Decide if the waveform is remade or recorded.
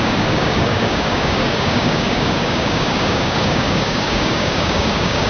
remade